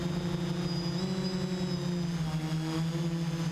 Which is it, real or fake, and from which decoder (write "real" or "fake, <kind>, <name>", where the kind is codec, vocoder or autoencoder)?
real